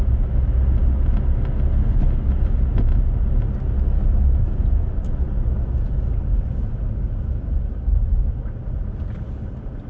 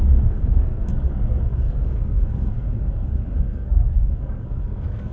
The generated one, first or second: second